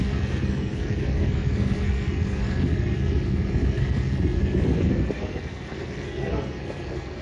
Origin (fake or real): fake